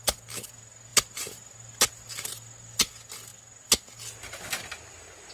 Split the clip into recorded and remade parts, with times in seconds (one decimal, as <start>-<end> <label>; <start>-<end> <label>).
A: 0.0-5.3 recorded